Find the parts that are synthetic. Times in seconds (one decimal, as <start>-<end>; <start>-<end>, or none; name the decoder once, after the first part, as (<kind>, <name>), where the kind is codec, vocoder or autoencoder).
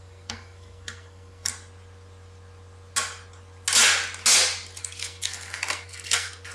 0.0-1.5 (codec, SNAC); 4.8-6.5